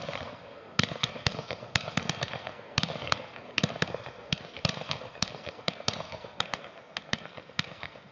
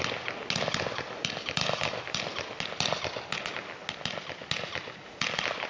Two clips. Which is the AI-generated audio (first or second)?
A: first